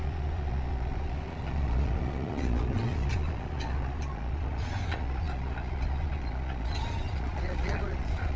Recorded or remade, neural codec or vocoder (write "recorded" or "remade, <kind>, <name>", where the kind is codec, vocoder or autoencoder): remade, vocoder, Vocos